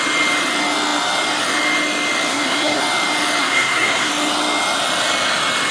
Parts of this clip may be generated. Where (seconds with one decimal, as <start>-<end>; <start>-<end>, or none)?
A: 2.3-2.8; 3.4-4.1